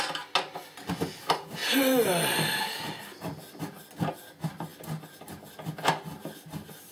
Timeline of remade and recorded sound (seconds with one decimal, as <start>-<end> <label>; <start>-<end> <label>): 0.0-6.9 recorded